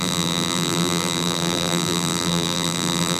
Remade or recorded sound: remade